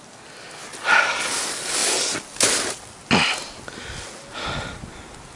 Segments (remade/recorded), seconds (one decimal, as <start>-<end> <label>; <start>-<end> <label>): 0.0-5.4 recorded